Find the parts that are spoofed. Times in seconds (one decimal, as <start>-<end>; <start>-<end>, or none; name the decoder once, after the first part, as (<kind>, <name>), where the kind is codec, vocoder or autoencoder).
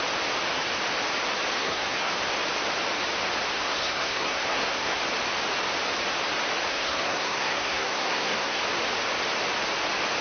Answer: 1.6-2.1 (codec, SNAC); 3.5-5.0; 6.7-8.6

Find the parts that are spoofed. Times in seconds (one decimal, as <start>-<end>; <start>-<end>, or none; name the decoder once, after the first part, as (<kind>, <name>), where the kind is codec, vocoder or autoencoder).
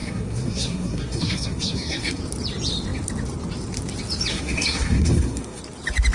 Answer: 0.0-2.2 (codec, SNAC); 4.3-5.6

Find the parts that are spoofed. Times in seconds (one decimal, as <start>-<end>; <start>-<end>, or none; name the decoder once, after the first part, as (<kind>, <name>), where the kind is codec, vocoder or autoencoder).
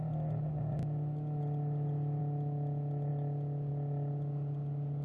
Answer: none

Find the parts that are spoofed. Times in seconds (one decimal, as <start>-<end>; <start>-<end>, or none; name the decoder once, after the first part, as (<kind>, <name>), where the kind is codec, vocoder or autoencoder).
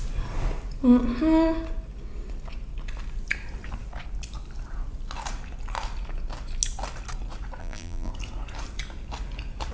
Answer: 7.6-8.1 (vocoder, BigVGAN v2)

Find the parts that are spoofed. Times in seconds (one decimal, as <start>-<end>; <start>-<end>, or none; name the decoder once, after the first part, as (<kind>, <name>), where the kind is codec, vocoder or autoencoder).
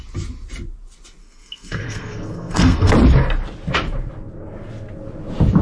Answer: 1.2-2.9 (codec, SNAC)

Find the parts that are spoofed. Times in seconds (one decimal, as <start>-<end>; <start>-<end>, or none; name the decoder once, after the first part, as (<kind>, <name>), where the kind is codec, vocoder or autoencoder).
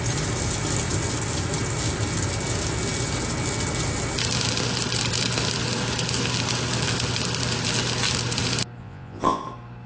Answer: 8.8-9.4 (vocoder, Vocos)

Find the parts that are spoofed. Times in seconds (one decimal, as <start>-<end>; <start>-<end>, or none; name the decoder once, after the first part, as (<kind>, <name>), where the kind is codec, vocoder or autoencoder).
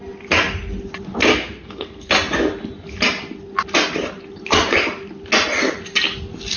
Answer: 1.3-2.1 (codec, SNAC)